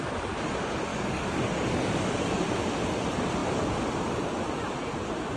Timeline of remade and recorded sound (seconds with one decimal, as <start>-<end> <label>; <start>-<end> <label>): 0.0-0.9 recorded; 0.9-2.4 remade; 2.4-5.4 recorded